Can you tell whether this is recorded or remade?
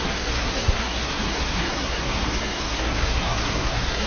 remade